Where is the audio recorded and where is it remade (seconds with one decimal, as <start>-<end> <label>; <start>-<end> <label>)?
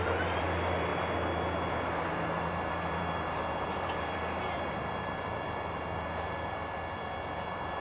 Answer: 0.0-0.9 remade; 0.9-1.7 recorded; 1.7-7.8 remade